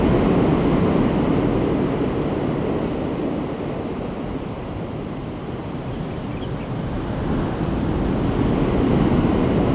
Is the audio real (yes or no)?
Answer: yes